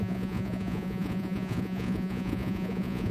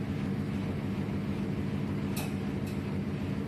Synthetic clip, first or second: first